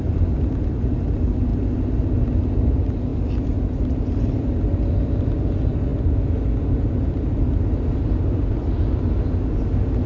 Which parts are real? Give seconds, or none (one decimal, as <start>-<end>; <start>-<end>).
0.0-10.1